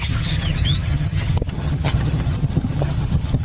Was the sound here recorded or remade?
remade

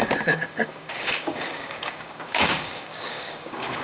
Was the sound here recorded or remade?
remade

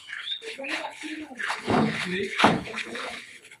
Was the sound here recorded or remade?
remade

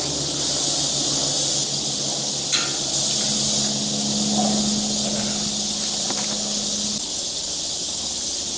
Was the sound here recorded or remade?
recorded